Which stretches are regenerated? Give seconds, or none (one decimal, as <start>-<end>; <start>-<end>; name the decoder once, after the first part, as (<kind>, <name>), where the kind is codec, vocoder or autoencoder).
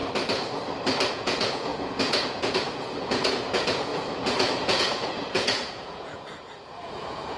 1.1-7.4 (vocoder, Vocos)